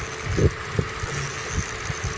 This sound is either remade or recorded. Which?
recorded